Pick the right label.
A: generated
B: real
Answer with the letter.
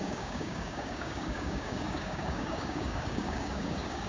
A